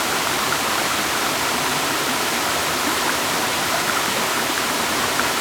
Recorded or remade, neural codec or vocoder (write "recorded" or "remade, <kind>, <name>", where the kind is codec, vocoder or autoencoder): remade, vocoder, BigVGAN v2